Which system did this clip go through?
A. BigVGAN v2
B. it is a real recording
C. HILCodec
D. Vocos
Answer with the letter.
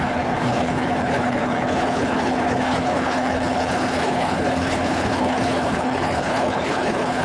C